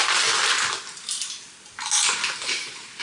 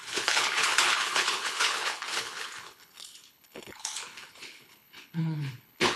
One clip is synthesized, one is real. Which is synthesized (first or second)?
second